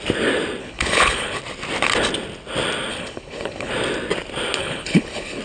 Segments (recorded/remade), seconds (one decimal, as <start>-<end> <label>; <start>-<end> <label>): 0.0-0.6 recorded; 0.6-1.4 remade; 1.4-2.9 recorded; 2.9-3.7 remade; 3.7-4.6 recorded; 4.6-5.4 remade